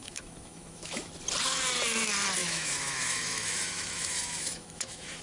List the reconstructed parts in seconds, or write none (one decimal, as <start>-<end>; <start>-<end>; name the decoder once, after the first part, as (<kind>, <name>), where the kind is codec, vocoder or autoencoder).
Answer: 0.0-1.1 (autoencoder, DAC-VAE); 2.4-5.2

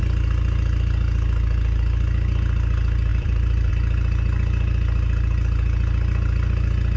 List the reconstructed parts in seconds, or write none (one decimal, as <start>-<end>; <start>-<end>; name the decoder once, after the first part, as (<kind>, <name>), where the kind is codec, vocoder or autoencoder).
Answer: 3.1-3.7 (vocoder, BigVGAN v2)

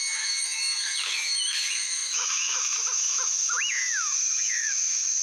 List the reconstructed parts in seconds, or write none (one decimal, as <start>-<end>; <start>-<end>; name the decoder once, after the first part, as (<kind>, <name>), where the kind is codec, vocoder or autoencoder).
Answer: 0.0-5.2 (autoencoder, DAC-VAE)

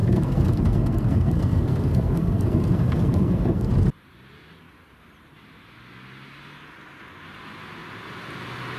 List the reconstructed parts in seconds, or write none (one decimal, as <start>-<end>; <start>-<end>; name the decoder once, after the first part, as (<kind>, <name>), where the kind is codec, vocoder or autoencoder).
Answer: 0.0-3.7 (codec, SNAC)

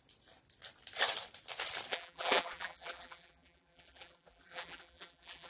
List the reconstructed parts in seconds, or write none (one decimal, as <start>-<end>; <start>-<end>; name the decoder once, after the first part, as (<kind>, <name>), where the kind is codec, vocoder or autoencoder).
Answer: 1.9-5.5 (vocoder, BigVGAN v2)

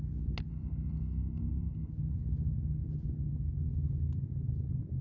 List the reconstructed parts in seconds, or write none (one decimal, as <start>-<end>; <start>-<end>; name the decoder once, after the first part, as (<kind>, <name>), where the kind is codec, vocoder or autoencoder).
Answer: 0.5-1.9 (codec, SNAC)

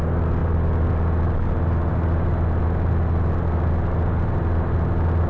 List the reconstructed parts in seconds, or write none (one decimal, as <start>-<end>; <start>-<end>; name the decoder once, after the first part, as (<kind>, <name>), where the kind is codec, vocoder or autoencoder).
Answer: none

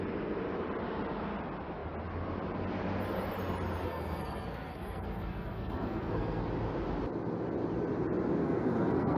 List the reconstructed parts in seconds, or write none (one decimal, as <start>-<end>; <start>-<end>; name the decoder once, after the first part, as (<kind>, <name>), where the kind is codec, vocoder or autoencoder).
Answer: 3.8-6.4 (codec, SNAC); 8.4-9.2